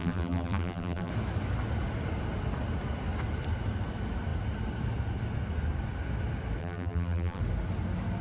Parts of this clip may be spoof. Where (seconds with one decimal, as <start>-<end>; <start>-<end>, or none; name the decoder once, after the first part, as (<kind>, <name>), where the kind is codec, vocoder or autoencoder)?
0.0-1.1 (vocoder, BigVGAN v2); 6.6-7.4